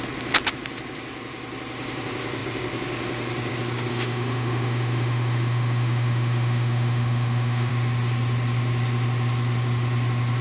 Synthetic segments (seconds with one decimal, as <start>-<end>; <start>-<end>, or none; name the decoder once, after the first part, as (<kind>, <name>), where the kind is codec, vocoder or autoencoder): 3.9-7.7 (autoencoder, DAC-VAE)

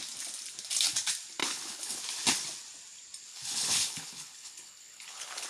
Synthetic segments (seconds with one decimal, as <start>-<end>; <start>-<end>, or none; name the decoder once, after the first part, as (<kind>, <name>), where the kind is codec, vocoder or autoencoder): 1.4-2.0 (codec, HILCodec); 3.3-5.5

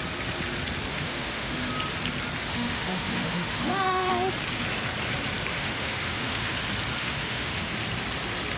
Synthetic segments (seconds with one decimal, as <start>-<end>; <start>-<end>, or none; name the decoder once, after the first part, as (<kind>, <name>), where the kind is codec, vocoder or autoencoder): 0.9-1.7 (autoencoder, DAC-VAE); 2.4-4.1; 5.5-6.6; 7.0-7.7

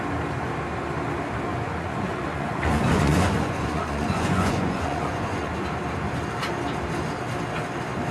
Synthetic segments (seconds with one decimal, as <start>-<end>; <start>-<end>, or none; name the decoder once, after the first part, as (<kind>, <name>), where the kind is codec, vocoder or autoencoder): 1.5-5.7 (vocoder, Vocos)

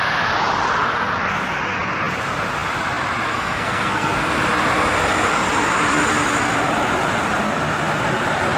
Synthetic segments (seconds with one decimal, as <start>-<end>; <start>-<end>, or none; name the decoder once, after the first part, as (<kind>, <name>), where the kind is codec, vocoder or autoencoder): 3.3-4.4 (codec, SNAC)

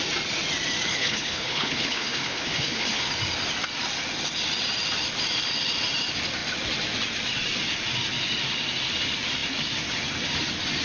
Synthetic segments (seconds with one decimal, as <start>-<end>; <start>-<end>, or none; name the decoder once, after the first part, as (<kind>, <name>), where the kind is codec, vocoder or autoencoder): 0.9-3.1 (codec, HILCodec)

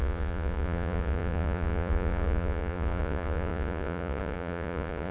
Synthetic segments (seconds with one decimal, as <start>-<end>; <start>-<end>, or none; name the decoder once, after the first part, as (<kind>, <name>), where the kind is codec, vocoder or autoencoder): 0.0-5.1 (vocoder, Vocos)

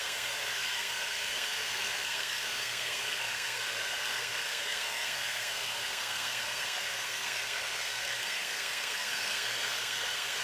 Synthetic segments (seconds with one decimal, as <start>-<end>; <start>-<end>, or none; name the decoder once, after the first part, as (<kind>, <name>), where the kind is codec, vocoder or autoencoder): 0.0-10.4 (codec, SNAC)